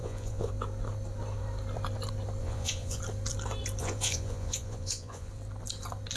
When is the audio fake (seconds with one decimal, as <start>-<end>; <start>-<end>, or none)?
0.0-0.5; 2.4-3.0; 3.8-5.3